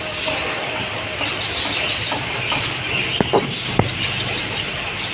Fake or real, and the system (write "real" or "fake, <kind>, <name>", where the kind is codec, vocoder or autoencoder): real